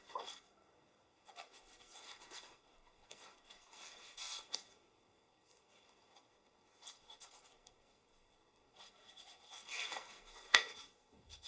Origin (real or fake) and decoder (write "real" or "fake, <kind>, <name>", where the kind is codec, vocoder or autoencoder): fake, codec, SNAC